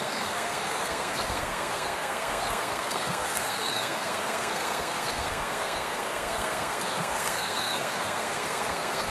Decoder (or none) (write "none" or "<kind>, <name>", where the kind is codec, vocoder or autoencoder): codec, SNAC